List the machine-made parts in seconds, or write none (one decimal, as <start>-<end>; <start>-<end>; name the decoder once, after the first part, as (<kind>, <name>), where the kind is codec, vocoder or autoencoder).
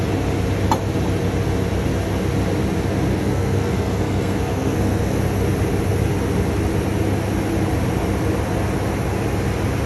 3.1-5.2 (codec, SNAC)